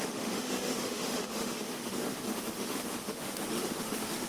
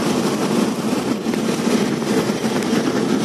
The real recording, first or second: second